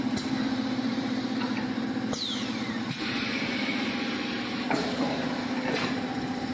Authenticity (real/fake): fake